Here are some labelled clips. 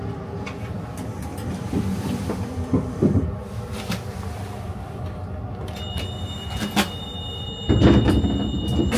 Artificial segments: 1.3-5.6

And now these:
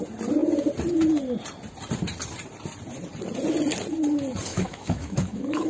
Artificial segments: 4.5-5.7

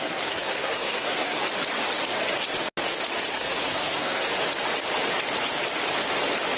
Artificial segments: 0.0-1.4; 3.3-4.3

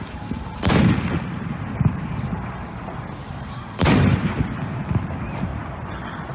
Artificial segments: 0.0-5.5

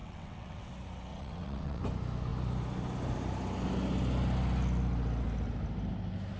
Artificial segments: 0.0-0.7; 1.1-1.8

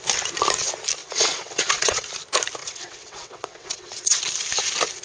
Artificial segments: 1.0-2.1; 2.6-4.2